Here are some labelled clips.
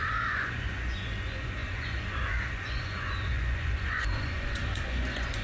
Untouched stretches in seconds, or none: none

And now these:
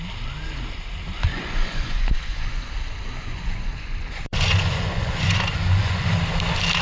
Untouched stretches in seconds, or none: 0.0-1.3; 2.7-3.2; 6.1-6.8